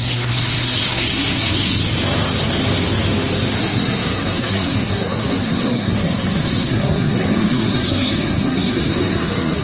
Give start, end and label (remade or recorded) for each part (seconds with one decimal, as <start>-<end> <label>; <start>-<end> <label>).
0.0-1.8 remade; 1.8-3.6 recorded; 3.6-9.6 remade